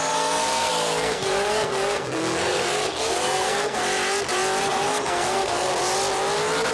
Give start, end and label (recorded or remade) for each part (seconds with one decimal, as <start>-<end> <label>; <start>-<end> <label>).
0.0-3.8 remade; 3.8-4.6 recorded; 4.6-5.7 remade; 5.7-6.7 recorded